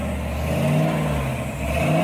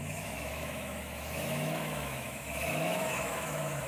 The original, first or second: first